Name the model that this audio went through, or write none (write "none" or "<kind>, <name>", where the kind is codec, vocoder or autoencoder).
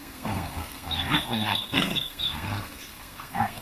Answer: codec, SNAC